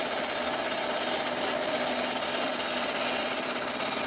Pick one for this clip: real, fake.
real